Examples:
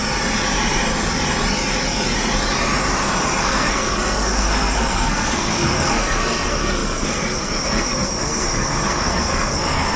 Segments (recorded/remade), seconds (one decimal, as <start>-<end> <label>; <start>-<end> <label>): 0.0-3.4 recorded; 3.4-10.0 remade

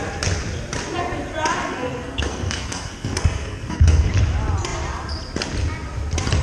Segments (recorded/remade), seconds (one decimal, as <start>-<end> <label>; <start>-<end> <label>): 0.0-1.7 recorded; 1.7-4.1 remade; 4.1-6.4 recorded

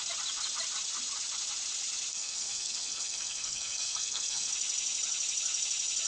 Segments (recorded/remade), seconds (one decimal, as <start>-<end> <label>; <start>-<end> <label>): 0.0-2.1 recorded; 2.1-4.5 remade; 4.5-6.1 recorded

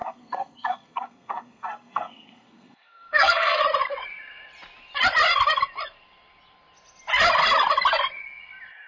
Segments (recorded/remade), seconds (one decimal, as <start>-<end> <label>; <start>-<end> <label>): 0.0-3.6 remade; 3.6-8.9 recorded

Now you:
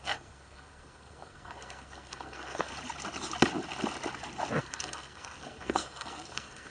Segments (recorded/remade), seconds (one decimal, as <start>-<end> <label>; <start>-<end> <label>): 0.0-2.7 remade; 2.7-4.6 recorded; 4.6-6.7 remade

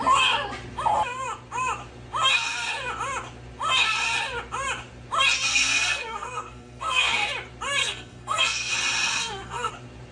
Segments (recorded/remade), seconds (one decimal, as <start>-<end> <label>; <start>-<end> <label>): 0.0-5.5 recorded; 5.5-7.1 remade; 7.1-7.8 recorded; 7.8-8.7 remade; 8.7-9.1 recorded; 9.1-9.7 remade; 9.7-10.1 recorded

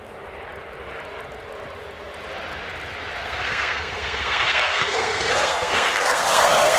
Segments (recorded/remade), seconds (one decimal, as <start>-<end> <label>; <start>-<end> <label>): 0.0-3.2 recorded; 3.2-6.8 remade